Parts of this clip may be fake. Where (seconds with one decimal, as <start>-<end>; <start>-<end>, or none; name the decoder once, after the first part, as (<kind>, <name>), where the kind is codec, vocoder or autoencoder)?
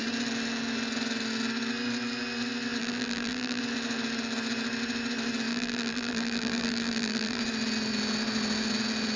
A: 2.8-3.6 (vocoder, BigVGAN v2); 5.5-7.4